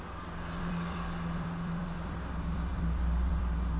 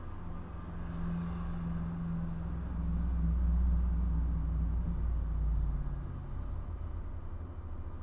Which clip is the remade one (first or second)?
first